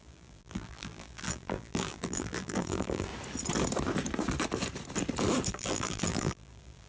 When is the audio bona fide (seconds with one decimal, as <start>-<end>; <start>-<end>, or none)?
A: 3.1-5.5

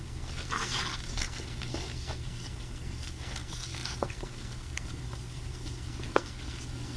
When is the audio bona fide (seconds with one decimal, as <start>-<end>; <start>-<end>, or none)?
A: none

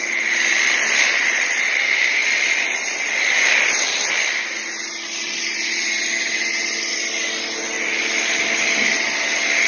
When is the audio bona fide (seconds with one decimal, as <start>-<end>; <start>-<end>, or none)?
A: 0.0-9.7